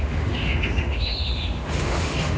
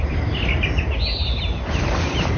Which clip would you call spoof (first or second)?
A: first